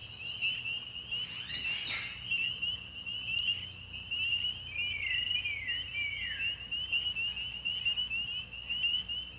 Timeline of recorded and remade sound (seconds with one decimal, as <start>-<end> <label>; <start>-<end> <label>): 0.0-9.4 recorded